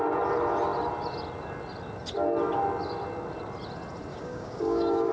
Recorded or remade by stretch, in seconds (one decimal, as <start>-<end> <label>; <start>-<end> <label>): 0.0-4.1 recorded; 4.1-5.1 remade